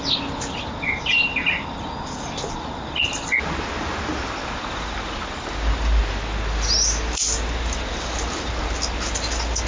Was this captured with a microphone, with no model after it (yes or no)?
yes